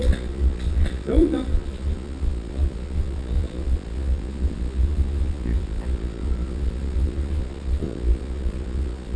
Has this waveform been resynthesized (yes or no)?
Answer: yes